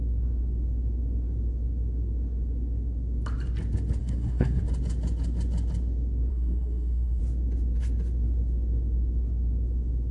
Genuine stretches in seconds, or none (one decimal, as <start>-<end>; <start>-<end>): 0.0-4.0; 4.6-6.3; 7.2-10.1